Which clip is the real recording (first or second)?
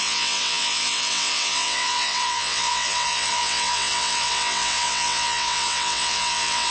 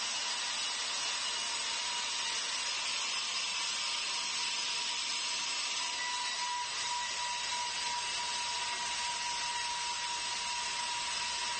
second